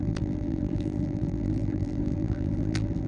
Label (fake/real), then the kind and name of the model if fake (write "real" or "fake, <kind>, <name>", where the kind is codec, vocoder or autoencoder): fake, vocoder, BigVGAN v2